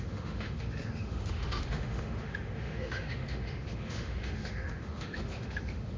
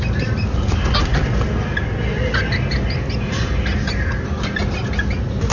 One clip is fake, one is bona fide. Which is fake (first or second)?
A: first